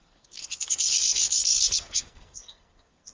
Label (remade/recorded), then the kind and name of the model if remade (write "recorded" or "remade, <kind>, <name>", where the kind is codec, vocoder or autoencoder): remade, codec, SNAC